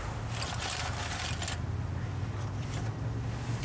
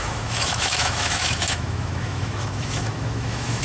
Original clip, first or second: first